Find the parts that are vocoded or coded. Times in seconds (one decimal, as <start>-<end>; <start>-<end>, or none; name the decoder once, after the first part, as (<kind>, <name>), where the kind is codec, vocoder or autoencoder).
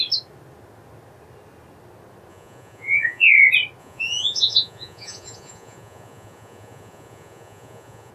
2.3-3.3 (vocoder, Vocos); 3.8-8.1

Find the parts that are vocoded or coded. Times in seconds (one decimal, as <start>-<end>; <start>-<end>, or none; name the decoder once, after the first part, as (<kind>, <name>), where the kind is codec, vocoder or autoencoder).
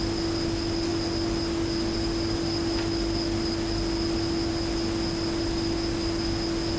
none